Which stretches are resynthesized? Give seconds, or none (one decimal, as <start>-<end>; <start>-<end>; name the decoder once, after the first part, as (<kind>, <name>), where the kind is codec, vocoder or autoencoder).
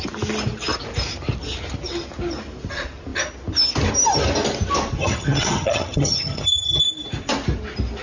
5.0-6.8 (vocoder, HiFi-GAN)